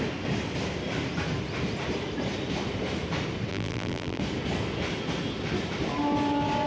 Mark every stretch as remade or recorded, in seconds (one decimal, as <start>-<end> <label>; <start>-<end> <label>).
0.0-3.5 recorded; 3.5-4.2 remade; 4.2-6.7 recorded